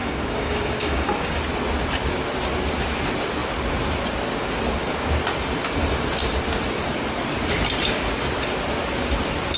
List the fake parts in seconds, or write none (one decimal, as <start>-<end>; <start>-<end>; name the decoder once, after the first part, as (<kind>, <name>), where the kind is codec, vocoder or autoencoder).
0.0-1.4 (codec, DAC)

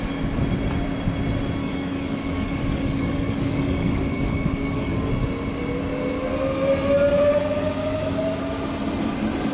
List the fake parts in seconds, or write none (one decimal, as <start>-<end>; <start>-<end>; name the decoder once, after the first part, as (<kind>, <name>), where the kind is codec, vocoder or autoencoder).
1.6-5.1 (codec, DAC); 7.3-8.1

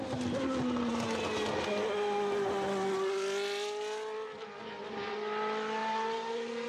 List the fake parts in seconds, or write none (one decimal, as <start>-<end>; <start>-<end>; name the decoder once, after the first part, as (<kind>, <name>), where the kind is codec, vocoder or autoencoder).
5.8-6.7 (vocoder, BigVGAN v2)

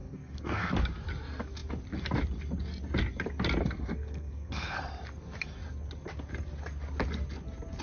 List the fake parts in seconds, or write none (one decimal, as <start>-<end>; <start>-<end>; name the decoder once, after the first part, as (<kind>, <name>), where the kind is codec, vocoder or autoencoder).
0.0-0.7 (codec, SNAC); 3.6-4.8

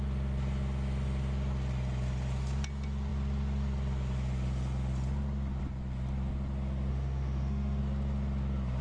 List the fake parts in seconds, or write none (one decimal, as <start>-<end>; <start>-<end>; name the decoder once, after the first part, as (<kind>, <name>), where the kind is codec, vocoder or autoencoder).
6.9-7.8 (autoencoder, DAC-VAE)

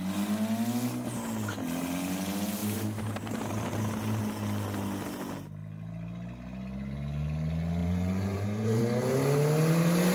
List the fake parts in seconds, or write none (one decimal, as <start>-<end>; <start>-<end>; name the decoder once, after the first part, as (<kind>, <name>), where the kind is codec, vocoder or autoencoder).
2.6-4.2 (vocoder, BigVGAN v2); 7.8-8.8